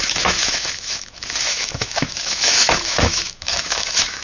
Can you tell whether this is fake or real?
fake